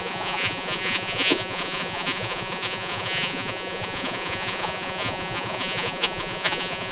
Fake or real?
fake